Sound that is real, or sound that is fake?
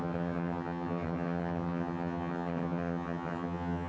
fake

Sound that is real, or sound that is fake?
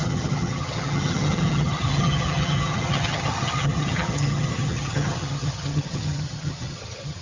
fake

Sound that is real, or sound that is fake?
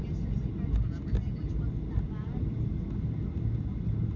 real